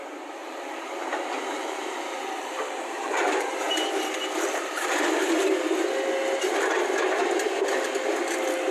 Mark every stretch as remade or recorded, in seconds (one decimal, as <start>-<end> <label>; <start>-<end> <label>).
0.0-0.4 recorded; 0.4-5.0 remade; 5.0-6.4 recorded; 6.4-7.2 remade; 7.2-8.7 recorded

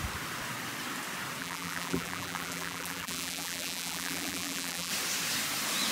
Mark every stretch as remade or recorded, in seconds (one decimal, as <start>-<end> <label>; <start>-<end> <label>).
0.0-1.4 recorded; 1.4-4.9 remade; 4.9-5.9 recorded

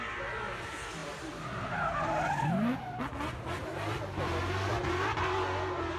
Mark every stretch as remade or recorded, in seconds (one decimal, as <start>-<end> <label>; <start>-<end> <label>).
0.0-3.6 recorded; 3.6-4.7 remade; 4.7-6.0 recorded

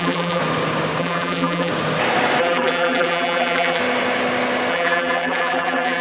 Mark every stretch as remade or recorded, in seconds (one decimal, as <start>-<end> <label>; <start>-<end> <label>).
0.0-0.4 remade; 0.4-1.0 recorded; 1.0-1.7 remade; 1.7-2.4 recorded; 2.4-3.8 remade; 3.8-4.7 recorded; 4.7-6.0 remade

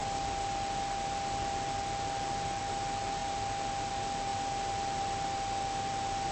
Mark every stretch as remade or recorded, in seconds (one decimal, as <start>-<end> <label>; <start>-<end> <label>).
0.0-2.6 remade; 2.6-6.3 recorded

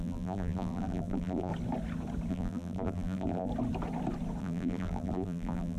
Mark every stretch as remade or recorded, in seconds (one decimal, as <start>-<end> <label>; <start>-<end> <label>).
0.0-1.5 remade; 1.5-2.3 recorded; 2.3-3.5 remade; 3.5-4.4 recorded; 4.4-5.8 remade

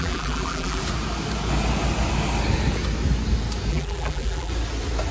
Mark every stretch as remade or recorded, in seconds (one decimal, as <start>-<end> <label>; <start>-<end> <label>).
0.0-0.8 remade; 0.8-3.7 recorded; 3.7-4.5 remade; 4.5-5.1 recorded